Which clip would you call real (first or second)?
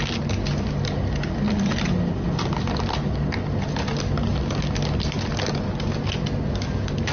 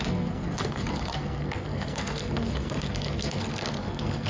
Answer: first